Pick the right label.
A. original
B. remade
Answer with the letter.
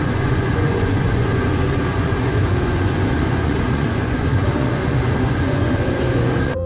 B